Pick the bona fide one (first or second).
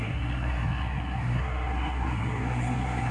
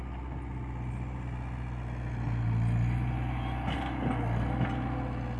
second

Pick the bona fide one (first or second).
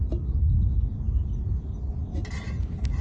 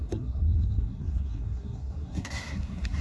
first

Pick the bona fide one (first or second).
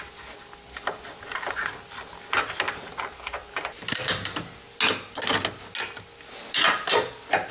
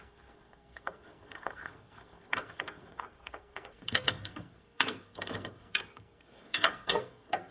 first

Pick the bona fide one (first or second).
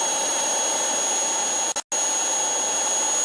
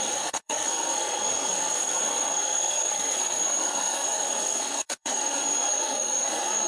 first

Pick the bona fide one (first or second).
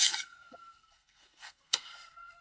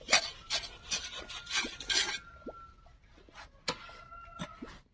second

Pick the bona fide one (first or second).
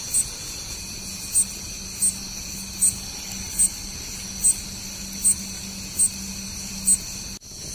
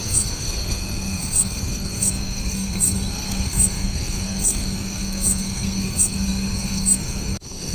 first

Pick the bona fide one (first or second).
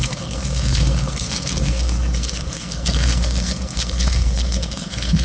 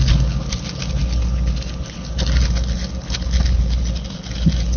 second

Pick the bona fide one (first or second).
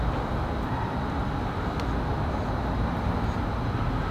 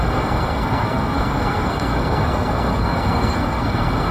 first